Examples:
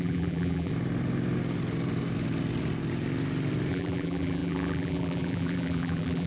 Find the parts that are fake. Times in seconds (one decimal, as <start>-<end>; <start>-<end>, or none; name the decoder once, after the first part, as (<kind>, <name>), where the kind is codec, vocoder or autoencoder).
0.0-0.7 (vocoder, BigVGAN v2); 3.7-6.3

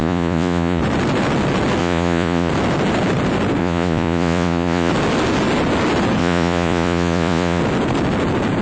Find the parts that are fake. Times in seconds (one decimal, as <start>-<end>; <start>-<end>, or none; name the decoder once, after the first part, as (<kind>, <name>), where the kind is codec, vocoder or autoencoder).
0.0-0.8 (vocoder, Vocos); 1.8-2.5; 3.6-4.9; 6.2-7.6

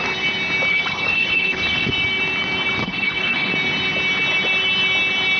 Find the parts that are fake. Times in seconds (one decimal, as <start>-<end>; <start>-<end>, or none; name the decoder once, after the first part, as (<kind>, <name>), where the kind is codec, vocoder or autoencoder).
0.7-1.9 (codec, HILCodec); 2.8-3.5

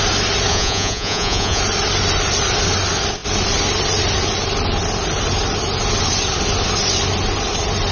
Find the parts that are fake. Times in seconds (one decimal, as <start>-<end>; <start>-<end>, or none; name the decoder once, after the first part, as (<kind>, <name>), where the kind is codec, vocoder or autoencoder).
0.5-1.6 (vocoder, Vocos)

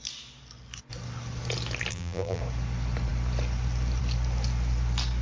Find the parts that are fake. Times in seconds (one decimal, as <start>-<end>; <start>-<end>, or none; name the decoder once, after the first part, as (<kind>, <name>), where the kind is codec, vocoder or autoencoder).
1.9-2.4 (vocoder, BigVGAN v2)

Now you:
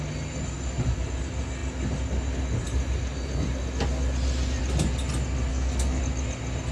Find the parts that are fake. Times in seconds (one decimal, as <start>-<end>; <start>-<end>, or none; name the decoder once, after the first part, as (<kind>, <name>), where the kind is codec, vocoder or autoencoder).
5.5-6.0 (codec, SNAC)